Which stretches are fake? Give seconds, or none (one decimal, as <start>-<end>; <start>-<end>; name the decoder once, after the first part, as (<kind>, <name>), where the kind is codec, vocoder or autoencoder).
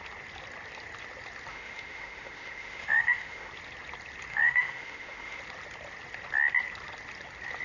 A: 1.5-3.5 (autoencoder, DAC-VAE); 4.3-5.4